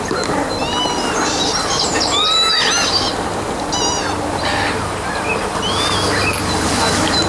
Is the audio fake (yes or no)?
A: no